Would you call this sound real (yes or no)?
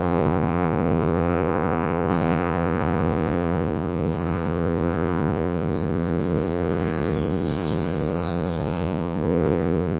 no